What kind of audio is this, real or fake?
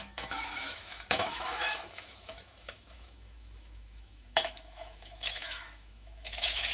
fake